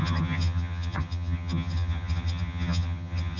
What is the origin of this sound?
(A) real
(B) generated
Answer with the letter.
B